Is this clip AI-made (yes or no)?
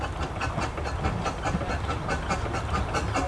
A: no